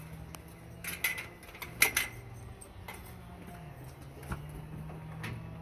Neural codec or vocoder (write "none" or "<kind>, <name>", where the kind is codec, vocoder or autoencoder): none